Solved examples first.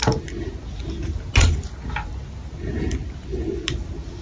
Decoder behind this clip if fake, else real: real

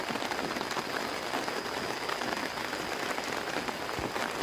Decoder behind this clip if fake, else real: real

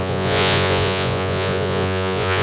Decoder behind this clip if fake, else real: fake, vocoder, Vocos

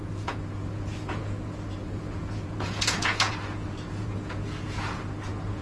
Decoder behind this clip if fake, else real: fake, vocoder, Vocos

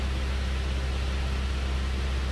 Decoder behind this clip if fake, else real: real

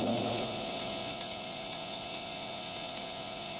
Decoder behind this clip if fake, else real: fake, vocoder, Vocos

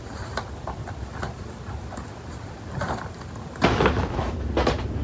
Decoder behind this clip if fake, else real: real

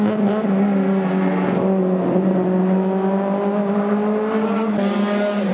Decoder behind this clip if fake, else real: real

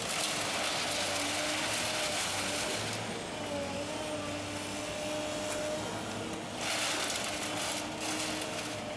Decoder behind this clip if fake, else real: real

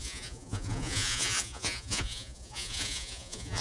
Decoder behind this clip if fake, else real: fake, vocoder, Vocos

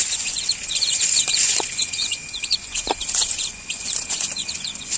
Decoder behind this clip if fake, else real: fake, vocoder, Vocos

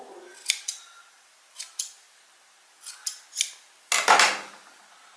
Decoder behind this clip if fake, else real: real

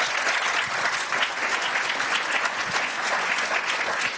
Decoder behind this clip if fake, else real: fake, vocoder, Vocos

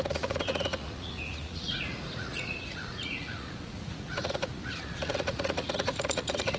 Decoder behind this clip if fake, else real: fake, vocoder, Vocos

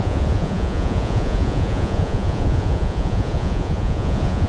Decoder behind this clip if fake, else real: fake, vocoder, Vocos